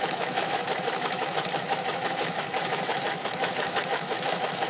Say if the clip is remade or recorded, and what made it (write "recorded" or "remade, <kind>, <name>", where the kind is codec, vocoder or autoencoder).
remade, autoencoder, DAC-VAE